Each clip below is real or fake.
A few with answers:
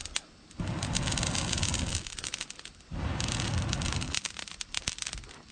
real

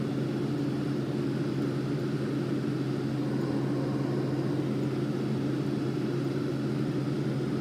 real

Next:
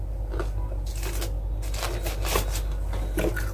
real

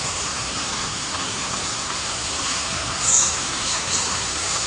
fake